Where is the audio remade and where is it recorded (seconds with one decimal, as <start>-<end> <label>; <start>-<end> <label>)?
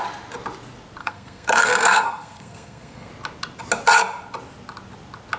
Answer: 0.0-1.0 recorded; 1.0-3.1 remade; 3.1-5.4 recorded